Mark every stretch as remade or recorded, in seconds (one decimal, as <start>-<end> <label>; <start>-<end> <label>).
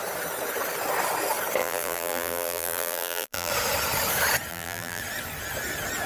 0.0-1.6 recorded; 1.6-3.5 remade; 3.5-4.5 recorded; 4.5-5.0 remade; 5.0-6.1 recorded